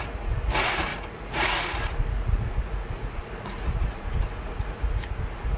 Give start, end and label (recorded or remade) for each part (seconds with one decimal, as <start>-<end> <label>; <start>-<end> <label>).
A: 0.0-5.6 remade